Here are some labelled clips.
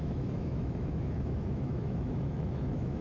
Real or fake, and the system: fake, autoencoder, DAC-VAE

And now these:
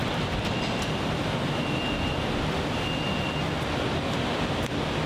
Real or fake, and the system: real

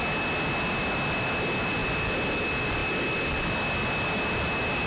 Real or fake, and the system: real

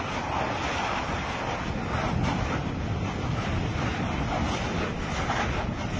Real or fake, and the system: real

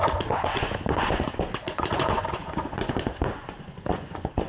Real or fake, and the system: fake, vocoder, Vocos